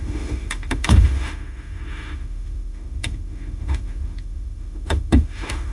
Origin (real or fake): fake